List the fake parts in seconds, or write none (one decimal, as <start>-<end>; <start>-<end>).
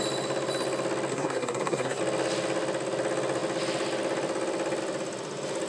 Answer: 1.1-2.0